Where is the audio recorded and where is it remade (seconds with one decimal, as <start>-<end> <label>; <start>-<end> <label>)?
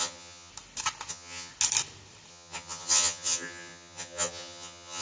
0.0-0.5 remade; 0.5-1.1 recorded; 1.1-1.5 remade; 1.5-2.3 recorded; 2.3-5.0 remade